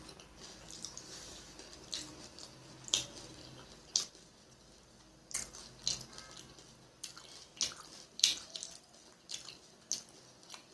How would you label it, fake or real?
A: real